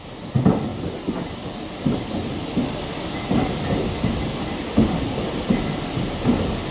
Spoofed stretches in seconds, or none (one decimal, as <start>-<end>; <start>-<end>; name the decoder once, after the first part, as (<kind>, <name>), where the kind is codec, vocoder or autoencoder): none